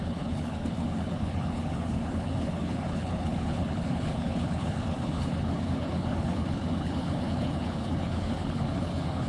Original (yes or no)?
no